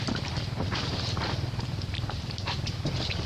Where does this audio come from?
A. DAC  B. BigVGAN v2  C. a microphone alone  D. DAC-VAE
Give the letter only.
B